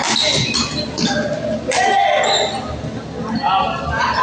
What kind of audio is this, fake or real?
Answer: real